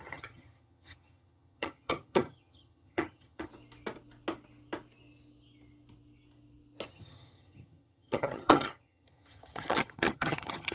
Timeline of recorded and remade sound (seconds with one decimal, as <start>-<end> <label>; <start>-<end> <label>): 0.0-3.5 remade; 3.5-6.9 recorded; 6.9-10.7 remade